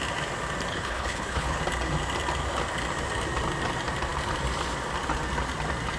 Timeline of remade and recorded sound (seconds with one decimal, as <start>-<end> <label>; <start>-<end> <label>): 0.0-0.7 recorded; 0.7-1.6 remade; 1.6-6.0 recorded